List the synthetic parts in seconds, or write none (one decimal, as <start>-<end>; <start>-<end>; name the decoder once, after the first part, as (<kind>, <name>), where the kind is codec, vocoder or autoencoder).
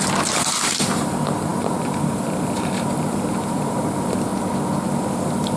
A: 0.0-4.3 (vocoder, BigVGAN v2); 4.8-5.6